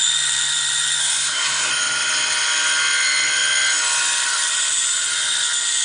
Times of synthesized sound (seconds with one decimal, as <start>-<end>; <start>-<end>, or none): 1.0-1.7